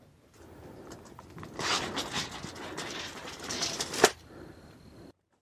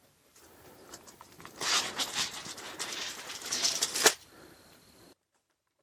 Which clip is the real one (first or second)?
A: first